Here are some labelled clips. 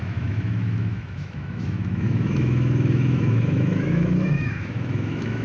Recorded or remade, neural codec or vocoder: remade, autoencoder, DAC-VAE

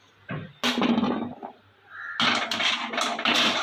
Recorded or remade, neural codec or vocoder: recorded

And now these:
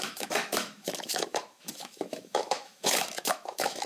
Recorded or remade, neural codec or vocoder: remade, autoencoder, DAC-VAE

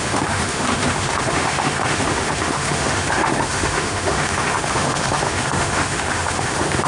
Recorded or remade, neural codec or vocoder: remade, autoencoder, DAC-VAE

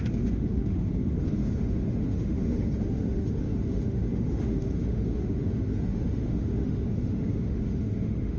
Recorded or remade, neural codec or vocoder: remade, autoencoder, DAC-VAE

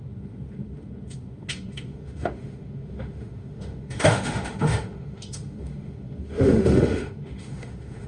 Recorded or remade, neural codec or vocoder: remade, autoencoder, DAC-VAE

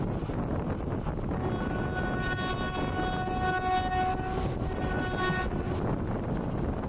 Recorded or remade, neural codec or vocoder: recorded